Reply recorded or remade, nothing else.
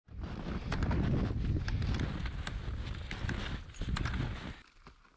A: recorded